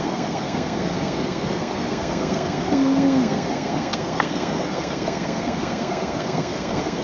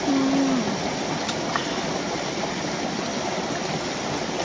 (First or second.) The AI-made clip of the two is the first